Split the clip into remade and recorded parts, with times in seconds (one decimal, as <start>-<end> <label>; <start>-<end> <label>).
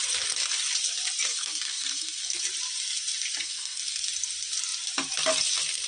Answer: 0.0-1.3 recorded; 1.3-2.4 remade; 2.4-3.4 recorded; 3.4-4.0 remade; 4.0-5.9 recorded